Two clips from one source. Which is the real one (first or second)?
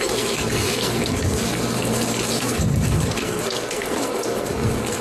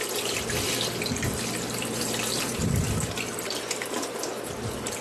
second